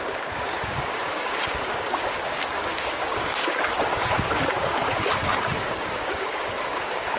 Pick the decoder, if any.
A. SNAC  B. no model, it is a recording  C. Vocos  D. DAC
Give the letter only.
D